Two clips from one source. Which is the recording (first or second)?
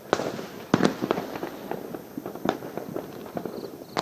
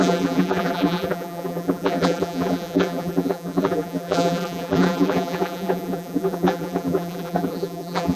first